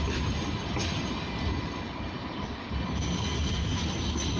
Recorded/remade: recorded